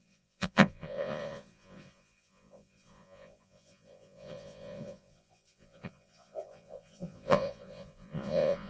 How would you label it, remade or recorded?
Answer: remade